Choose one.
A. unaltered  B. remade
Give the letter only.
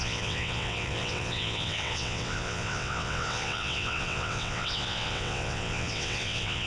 B